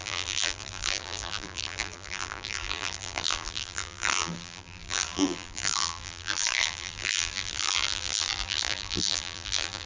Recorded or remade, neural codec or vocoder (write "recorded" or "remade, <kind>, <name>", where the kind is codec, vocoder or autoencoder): remade, vocoder, BigVGAN v2